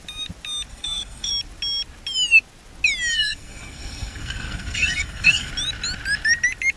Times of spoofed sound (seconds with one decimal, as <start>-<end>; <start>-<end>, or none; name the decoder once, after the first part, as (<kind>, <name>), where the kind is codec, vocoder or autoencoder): 0.7-1.3 (codec, SNAC); 3.1-5.5